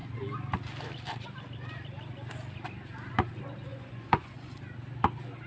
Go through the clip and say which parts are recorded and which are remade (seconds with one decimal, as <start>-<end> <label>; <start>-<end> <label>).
0.0-3.7 recorded; 3.7-4.6 remade; 4.6-5.5 recorded